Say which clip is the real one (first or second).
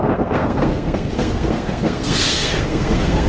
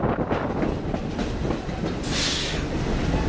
second